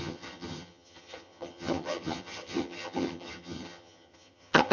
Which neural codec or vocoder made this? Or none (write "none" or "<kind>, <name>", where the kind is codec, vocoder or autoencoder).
vocoder, HiFi-GAN